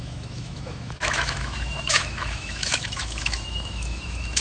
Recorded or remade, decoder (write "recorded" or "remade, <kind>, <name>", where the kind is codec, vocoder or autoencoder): remade, autoencoder, DAC-VAE